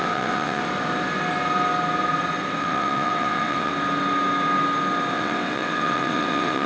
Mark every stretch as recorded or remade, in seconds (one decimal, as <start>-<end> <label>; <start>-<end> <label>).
0.0-0.6 remade; 0.6-2.6 recorded; 2.6-3.7 remade; 3.7-5.1 recorded; 5.1-6.7 remade